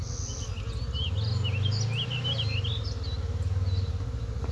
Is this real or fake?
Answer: real